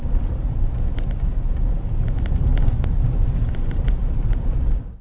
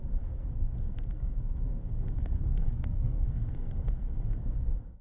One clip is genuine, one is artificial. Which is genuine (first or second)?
first